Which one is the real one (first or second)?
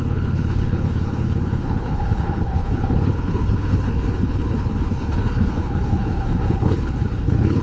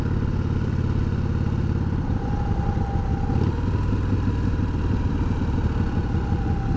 second